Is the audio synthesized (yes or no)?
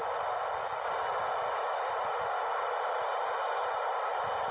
no